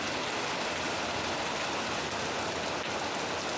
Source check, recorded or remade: recorded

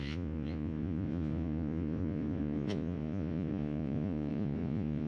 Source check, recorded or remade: remade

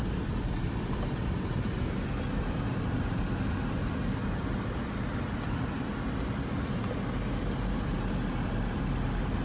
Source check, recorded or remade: recorded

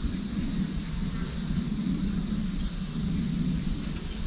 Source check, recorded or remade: recorded